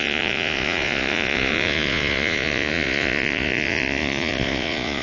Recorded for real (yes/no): no